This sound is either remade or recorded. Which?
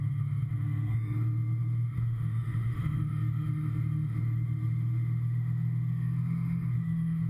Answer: remade